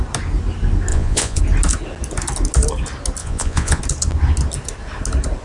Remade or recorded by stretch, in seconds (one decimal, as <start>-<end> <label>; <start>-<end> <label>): 0.0-0.9 recorded; 0.9-1.4 remade; 1.4-3.2 recorded; 3.2-3.8 remade; 3.8-5.4 recorded